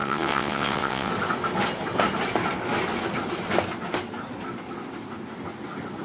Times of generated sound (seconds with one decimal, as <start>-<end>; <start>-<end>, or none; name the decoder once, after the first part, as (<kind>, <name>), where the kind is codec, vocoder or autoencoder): 0.0-1.1 (vocoder, WaveNeXt)